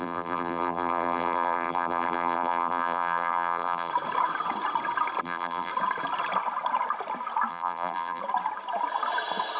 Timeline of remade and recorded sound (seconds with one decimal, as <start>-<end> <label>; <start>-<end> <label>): 0.0-3.9 remade; 3.9-5.2 recorded; 5.2-5.7 remade; 5.7-7.5 recorded; 7.5-8.2 remade; 8.2-9.6 recorded

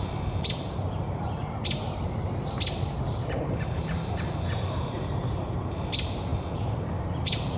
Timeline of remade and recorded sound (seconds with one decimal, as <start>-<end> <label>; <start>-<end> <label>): 0.0-7.6 remade

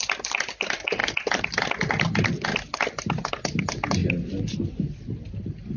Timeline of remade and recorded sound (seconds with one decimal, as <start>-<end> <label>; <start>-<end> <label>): 0.0-5.8 recorded